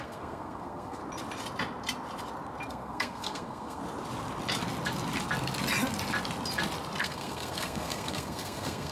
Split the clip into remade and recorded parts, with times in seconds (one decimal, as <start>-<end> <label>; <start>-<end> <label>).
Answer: 0.0-1.0 remade; 1.0-2.7 recorded; 2.7-3.8 remade; 3.8-7.0 recorded; 7.0-8.9 remade